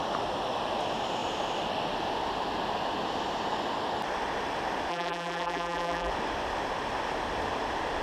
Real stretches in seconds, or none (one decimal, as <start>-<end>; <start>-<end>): 0.0-4.9; 6.1-8.0